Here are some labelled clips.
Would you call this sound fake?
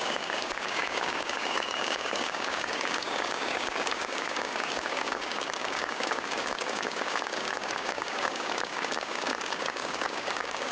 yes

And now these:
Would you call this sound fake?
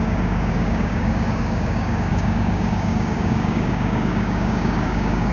yes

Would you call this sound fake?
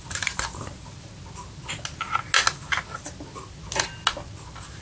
no